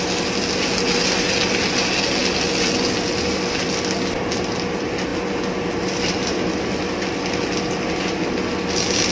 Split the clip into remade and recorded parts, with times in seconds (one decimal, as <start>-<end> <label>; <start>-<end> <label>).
0.0-9.1 recorded